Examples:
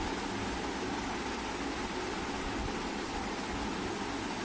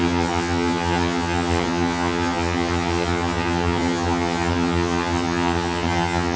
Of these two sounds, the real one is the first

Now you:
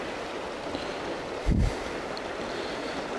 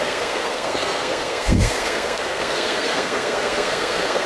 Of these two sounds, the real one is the first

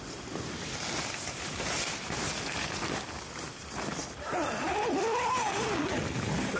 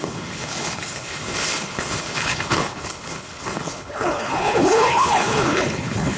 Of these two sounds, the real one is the first